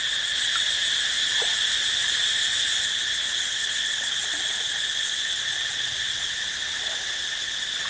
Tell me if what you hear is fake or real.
real